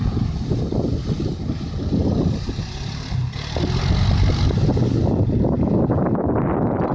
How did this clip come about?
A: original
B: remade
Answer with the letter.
A